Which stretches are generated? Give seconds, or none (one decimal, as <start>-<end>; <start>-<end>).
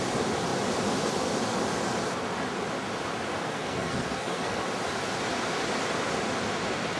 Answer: 3.4-4.6